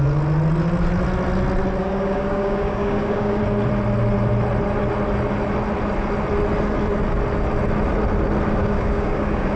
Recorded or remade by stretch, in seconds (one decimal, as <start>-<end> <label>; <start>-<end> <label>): 0.0-1.8 recorded; 1.8-3.4 remade; 3.4-8.6 recorded; 8.6-9.6 remade